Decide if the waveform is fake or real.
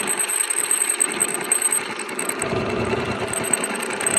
real